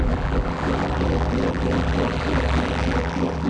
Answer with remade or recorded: remade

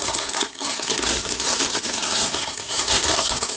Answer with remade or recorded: remade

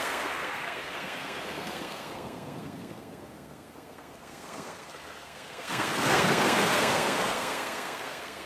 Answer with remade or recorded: remade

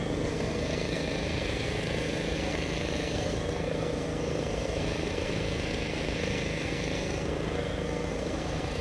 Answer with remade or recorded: remade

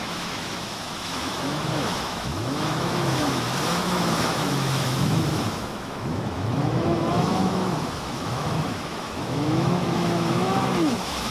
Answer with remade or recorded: remade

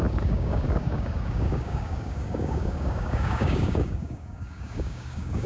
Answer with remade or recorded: remade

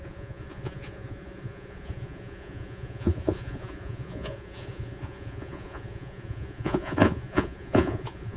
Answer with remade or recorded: remade